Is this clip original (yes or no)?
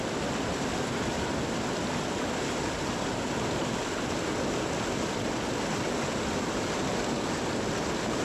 yes